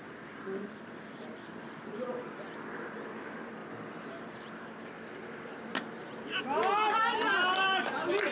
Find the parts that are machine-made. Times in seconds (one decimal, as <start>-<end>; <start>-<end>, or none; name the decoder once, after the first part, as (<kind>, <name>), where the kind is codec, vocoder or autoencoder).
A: none

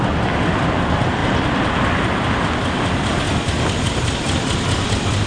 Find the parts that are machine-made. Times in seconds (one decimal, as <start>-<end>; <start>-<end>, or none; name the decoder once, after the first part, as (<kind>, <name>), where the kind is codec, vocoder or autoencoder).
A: none

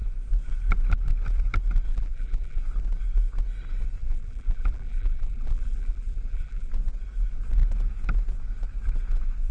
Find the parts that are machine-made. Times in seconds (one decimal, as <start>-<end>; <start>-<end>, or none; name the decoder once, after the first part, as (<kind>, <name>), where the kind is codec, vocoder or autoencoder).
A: 1.9-2.6 (vocoder, BigVGAN v2); 4.0-6.7